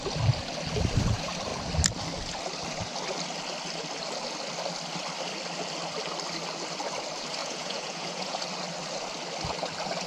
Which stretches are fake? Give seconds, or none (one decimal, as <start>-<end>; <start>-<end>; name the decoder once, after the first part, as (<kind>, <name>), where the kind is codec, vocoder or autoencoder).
7.4-8.4 (vocoder, Vocos)